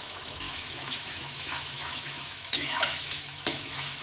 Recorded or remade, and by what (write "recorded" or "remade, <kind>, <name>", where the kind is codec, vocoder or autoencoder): remade, autoencoder, DAC-VAE